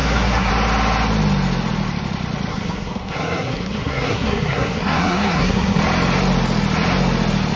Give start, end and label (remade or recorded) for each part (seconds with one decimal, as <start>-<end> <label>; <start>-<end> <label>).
0.0-0.5 remade; 0.5-2.5 recorded; 2.5-5.8 remade; 5.8-7.6 recorded